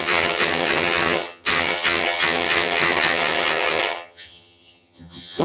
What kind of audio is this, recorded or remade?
remade